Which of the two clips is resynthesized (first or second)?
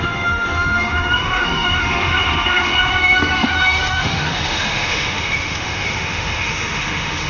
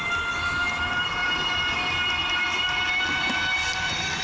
first